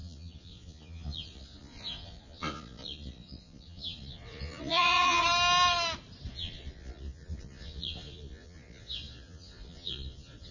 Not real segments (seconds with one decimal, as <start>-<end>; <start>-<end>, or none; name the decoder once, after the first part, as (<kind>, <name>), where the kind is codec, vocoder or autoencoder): 0.0-5.2 (vocoder, Vocos); 6.3-10.5